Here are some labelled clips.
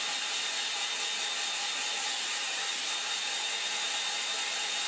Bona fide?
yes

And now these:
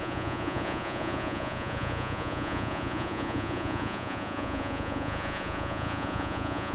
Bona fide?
no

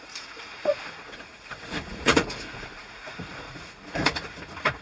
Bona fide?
no